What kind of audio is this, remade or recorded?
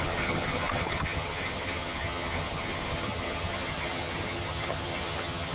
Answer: remade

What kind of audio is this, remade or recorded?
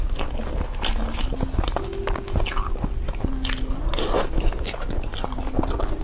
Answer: recorded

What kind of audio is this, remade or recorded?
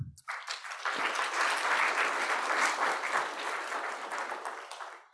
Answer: remade